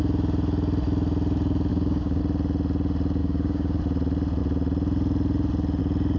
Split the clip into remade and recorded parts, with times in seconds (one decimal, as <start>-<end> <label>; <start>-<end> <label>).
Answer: 0.0-1.7 recorded; 1.7-2.2 remade; 2.2-3.2 recorded; 3.2-3.8 remade; 3.8-6.2 recorded